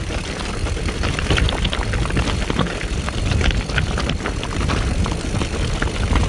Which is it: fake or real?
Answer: real